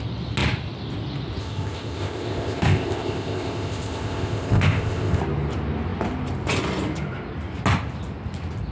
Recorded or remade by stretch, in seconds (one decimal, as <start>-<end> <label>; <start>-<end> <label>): 0.0-1.4 recorded; 1.4-5.2 remade; 5.2-8.7 recorded